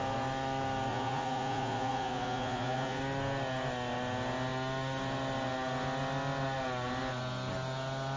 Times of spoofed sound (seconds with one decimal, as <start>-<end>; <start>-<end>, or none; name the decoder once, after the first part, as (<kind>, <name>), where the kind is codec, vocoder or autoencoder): 0.9-3.0 (vocoder, Vocos)